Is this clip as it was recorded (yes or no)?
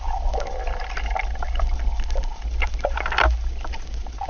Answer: yes